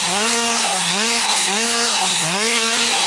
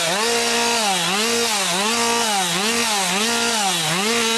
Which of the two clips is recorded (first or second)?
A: second